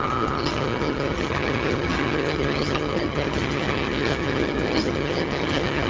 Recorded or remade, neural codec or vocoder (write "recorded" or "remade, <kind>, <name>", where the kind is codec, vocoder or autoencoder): remade, vocoder, HiFi-GAN